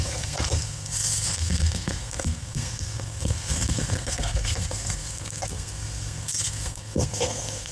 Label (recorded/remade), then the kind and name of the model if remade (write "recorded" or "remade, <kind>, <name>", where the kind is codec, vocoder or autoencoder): remade, codec, SNAC